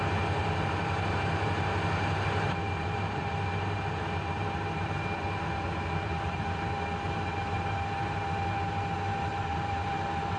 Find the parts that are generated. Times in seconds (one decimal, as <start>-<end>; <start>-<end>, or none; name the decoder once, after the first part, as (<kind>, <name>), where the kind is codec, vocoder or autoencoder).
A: 0.4-4.2 (vocoder, BigVGAN v2); 9.3-10.0